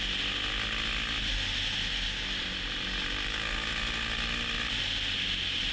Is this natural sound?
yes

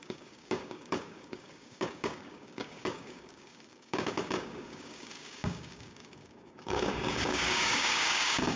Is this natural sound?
no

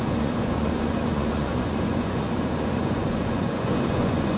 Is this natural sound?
no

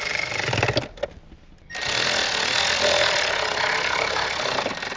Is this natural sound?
yes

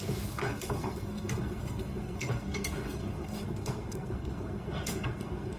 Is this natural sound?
no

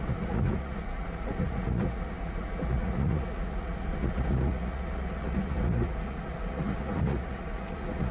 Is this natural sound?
no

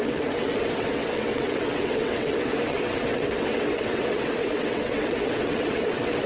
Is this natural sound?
no